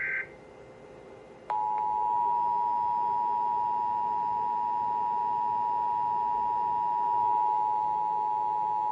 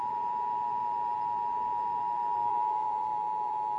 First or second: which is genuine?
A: first